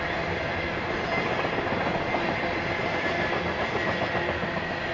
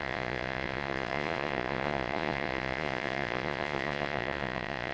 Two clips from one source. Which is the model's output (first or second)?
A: second